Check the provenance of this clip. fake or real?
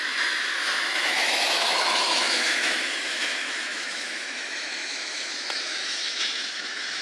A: fake